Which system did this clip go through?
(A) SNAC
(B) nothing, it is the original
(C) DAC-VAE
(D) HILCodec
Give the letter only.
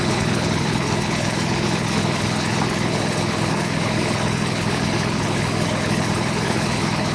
D